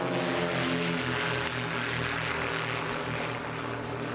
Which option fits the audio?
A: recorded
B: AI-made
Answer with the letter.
A